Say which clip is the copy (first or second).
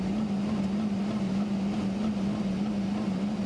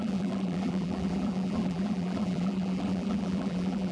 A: second